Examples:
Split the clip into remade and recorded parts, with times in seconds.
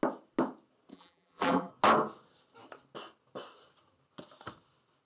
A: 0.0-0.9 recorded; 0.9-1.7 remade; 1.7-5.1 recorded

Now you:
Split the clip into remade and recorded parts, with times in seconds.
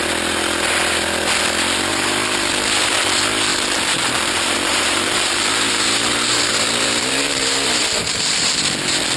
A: 0.0-1.9 recorded; 1.9-2.5 remade; 2.5-3.5 recorded; 3.5-8.6 remade; 8.6-9.2 recorded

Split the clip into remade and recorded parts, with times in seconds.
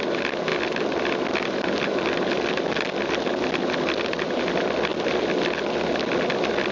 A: 0.0-6.7 recorded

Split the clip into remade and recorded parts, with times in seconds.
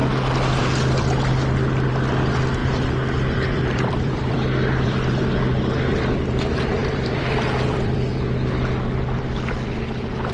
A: 0.0-2.6 recorded; 2.6-5.2 remade; 5.2-6.8 recorded; 6.8-8.1 remade; 8.1-10.3 recorded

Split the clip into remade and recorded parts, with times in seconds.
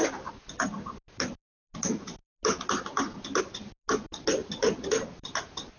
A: 0.0-4.4 recorded; 4.4-5.8 remade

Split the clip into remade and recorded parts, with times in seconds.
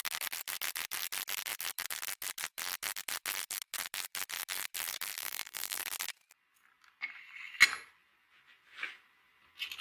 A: 0.0-5.2 recorded; 5.2-5.8 remade; 5.8-9.8 recorded